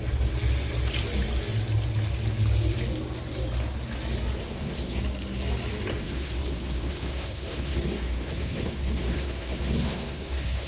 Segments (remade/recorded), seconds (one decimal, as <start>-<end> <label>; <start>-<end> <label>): 0.0-4.4 recorded; 4.4-5.0 remade; 5.0-5.9 recorded; 5.9-10.7 remade

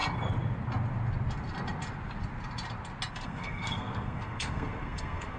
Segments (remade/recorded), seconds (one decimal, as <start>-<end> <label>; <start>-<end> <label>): 0.0-3.1 recorded; 3.1-5.4 remade

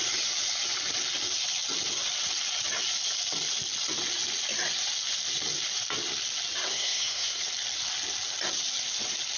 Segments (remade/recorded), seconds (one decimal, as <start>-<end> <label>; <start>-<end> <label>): 0.0-6.7 recorded; 6.7-7.4 remade; 7.4-9.4 recorded

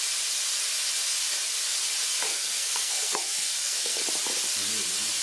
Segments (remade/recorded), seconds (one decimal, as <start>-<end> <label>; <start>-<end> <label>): 0.0-2.3 recorded; 2.3-4.0 remade; 4.0-5.2 recorded

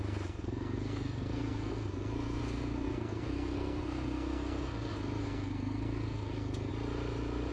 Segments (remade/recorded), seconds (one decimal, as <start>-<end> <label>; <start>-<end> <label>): 0.0-6.7 remade; 6.7-7.5 recorded